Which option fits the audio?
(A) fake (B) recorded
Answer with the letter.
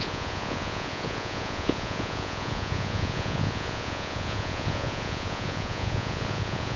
A